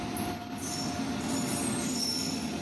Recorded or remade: recorded